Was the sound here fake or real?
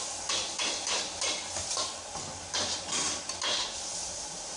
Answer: real